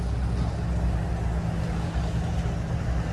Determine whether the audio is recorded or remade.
recorded